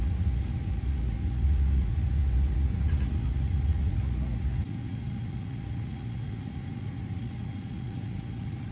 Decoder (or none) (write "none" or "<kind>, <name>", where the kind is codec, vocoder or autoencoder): vocoder, Vocos